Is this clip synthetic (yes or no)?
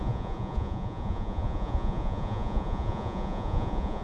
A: yes